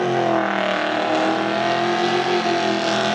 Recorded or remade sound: recorded